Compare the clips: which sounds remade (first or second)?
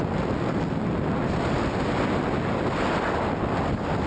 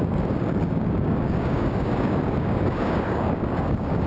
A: second